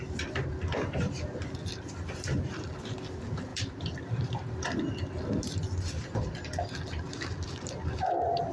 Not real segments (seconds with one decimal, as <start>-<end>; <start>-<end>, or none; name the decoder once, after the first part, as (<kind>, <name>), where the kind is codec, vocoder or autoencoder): 3.5-4.9 (vocoder, BigVGAN v2)